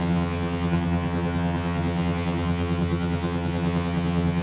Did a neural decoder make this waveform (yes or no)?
yes